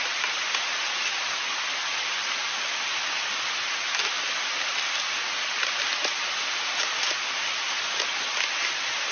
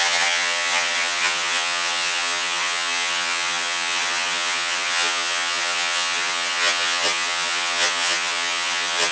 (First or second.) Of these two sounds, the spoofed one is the second